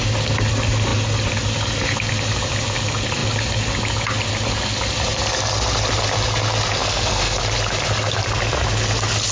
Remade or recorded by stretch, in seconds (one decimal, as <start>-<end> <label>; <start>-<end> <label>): 0.0-6.8 recorded; 6.8-7.4 remade; 7.4-9.3 recorded